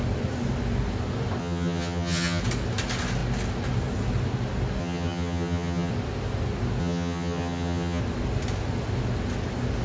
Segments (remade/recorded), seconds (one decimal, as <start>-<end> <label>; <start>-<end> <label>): 0.0-1.4 recorded; 1.4-2.4 remade; 2.4-4.8 recorded; 4.8-5.9 remade; 5.9-6.8 recorded; 6.8-8.0 remade; 8.0-9.8 recorded